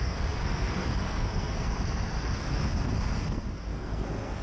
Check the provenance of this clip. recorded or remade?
remade